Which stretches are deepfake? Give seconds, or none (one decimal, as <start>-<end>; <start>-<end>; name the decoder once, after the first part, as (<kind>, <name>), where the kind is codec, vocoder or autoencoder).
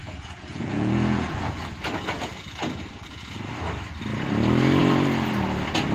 0.0-3.5 (vocoder, Vocos)